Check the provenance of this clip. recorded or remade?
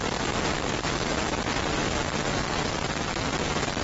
recorded